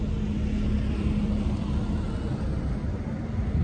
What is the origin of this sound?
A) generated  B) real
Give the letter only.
B